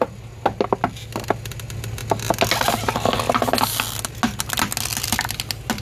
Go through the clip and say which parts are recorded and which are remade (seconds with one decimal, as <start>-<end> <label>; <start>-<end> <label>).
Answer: 0.0-5.8 recorded